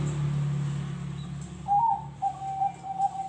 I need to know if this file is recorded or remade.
recorded